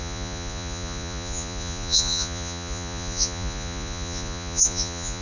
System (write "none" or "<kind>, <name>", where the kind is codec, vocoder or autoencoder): vocoder, Vocos